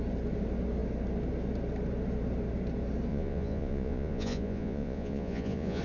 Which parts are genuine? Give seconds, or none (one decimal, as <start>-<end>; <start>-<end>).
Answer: 0.0-3.1